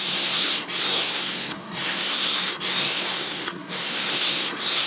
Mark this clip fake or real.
fake